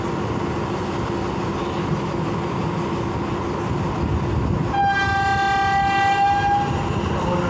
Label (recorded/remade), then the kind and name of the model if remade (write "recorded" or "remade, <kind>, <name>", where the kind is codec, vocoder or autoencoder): recorded